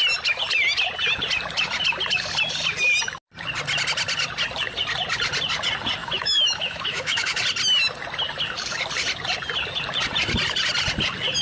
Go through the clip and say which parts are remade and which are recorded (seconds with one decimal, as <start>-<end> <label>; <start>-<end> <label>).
0.0-6.0 recorded; 6.0-7.4 remade; 7.4-11.4 recorded